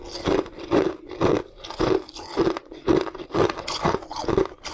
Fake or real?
real